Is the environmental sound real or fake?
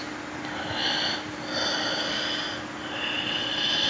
real